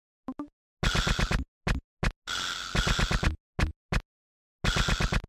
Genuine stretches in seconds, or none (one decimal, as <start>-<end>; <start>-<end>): 0.0-5.3